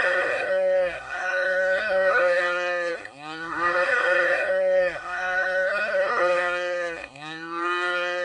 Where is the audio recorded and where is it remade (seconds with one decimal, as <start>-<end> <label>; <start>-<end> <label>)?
0.0-8.2 remade